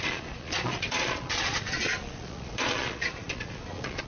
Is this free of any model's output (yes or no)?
no